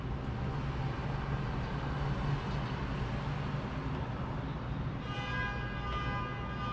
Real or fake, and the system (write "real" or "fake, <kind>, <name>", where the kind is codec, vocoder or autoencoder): real